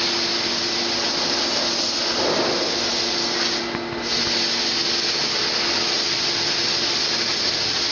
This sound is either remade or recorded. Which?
recorded